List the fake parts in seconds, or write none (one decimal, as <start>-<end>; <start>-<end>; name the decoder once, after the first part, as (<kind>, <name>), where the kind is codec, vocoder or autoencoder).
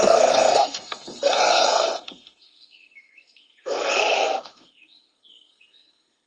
0.0-6.3 (codec, SNAC)